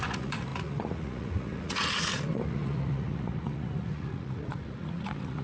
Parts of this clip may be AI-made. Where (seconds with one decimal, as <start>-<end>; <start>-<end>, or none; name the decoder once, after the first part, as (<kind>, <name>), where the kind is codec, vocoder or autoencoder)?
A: 0.0-5.4 (vocoder, Vocos)